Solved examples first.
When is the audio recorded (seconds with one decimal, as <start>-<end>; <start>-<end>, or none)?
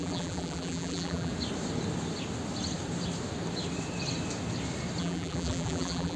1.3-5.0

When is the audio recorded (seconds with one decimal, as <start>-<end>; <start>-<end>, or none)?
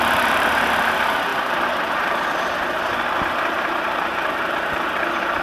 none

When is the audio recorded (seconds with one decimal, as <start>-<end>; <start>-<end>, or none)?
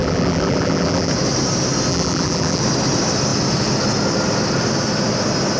1.1-1.9; 2.6-5.6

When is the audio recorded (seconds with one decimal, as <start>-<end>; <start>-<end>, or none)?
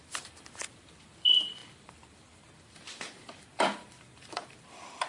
none